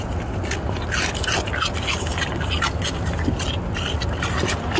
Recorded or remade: recorded